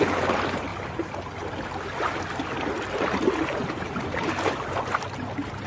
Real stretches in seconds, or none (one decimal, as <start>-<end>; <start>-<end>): 0.0-5.7